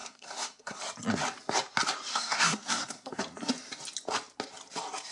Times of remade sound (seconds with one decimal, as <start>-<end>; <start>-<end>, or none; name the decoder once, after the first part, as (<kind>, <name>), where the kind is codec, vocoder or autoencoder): 0.0-0.8 (codec, SNAC); 2.1-3.2